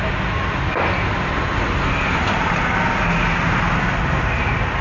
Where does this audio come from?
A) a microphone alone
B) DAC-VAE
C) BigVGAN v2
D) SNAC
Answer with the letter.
A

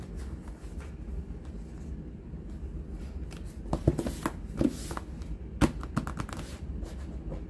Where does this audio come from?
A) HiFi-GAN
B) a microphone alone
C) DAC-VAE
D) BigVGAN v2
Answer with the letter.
B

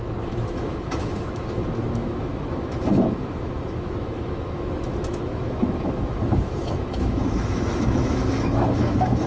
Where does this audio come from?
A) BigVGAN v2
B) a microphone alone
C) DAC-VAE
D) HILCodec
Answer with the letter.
C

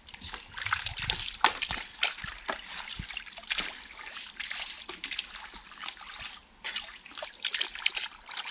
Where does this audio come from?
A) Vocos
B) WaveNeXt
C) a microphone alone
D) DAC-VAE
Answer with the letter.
C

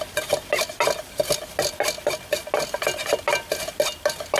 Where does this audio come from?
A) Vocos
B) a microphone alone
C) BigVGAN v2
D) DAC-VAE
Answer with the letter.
B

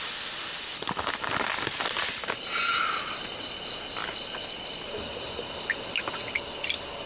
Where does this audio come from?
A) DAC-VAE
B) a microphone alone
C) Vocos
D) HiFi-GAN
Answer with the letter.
B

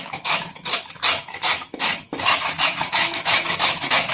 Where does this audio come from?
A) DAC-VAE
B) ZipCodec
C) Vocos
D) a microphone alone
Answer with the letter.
A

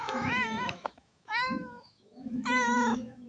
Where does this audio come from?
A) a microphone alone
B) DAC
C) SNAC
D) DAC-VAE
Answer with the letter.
D